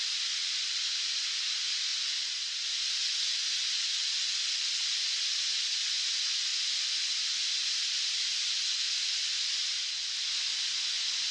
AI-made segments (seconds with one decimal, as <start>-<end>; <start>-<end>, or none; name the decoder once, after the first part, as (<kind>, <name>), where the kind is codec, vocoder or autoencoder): none